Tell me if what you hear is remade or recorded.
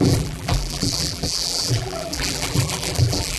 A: remade